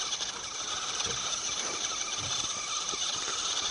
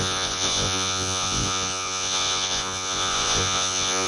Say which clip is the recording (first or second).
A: first